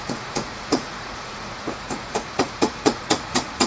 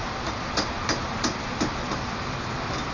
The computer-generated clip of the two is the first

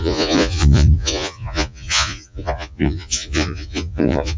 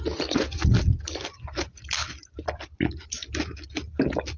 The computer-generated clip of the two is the first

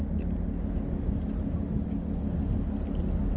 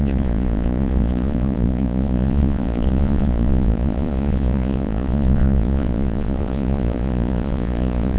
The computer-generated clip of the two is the second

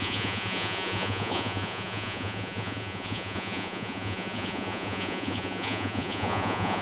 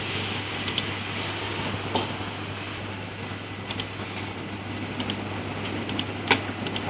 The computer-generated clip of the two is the first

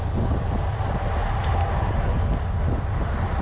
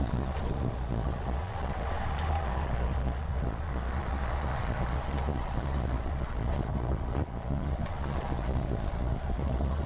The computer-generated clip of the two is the second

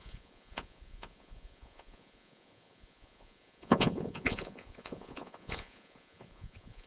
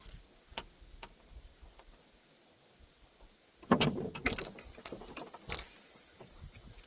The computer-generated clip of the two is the first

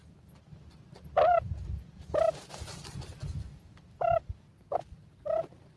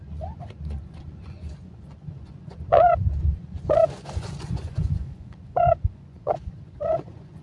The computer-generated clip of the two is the second